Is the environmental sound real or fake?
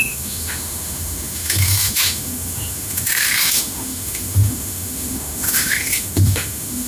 fake